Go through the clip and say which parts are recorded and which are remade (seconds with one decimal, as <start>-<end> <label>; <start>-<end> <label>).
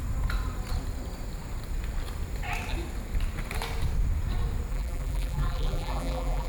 0.0-4.7 recorded; 4.7-6.5 remade